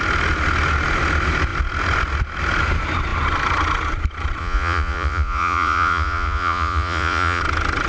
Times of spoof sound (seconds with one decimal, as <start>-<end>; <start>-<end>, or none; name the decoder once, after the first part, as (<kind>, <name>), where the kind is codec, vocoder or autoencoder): 4.4-7.4 (vocoder, Vocos)